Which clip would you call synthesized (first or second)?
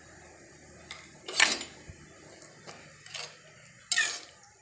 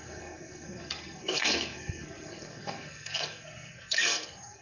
second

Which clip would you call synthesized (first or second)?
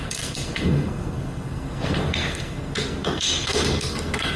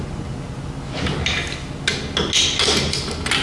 first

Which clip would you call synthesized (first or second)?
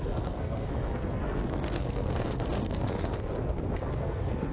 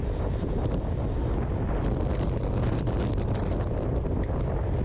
first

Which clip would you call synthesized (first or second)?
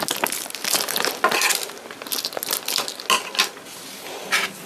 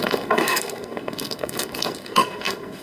second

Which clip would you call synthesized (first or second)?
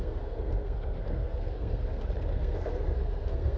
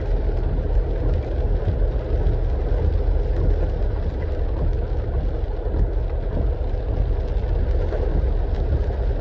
first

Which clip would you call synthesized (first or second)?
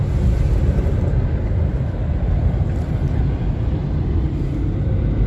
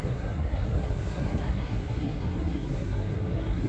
second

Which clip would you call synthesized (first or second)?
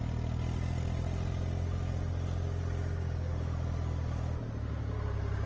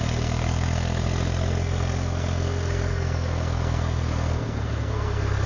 second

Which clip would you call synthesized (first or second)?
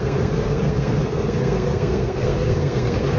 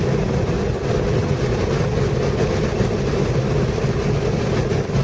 first